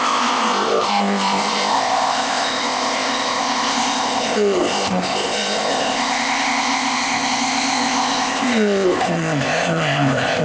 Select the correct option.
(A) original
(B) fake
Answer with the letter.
B